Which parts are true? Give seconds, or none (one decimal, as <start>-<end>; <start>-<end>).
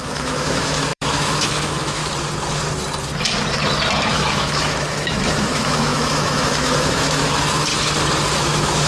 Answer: 2.0-4.1; 7.7-8.3